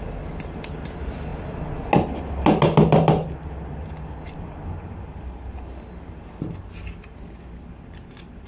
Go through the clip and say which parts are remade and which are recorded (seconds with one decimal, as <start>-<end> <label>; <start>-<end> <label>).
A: 0.0-8.5 recorded

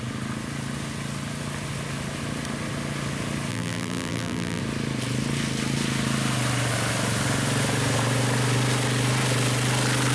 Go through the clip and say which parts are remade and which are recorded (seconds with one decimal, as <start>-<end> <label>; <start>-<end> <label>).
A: 0.0-3.5 recorded; 3.5-4.6 remade; 4.6-10.1 recorded

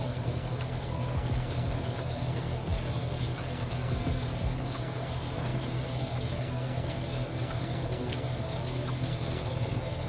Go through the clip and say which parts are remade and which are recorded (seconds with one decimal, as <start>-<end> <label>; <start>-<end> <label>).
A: 0.0-10.1 remade

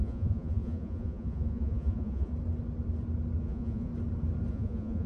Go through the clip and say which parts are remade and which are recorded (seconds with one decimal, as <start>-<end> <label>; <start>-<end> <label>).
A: 0.0-2.3 remade; 2.3-3.4 recorded; 3.4-3.9 remade; 3.9-4.5 recorded; 4.5-5.1 remade

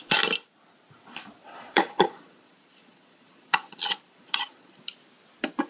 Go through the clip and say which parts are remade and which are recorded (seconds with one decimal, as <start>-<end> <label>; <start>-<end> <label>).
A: 0.0-1.4 recorded; 1.4-4.8 remade; 4.8-5.7 recorded

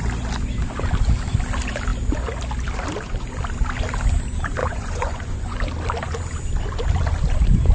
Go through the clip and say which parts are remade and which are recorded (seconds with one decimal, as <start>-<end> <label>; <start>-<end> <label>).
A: 0.0-4.6 recorded; 4.6-5.6 remade; 5.6-7.7 recorded

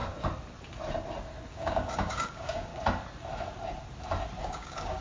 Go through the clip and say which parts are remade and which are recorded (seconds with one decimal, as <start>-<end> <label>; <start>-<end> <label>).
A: 0.0-1.5 recorded; 1.5-2.7 remade; 2.7-4.4 recorded; 4.4-5.0 remade

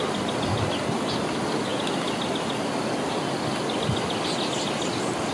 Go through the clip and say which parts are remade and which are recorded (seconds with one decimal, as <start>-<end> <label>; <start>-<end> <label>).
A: 0.0-5.3 recorded